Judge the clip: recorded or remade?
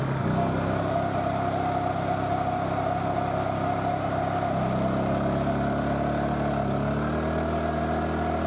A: recorded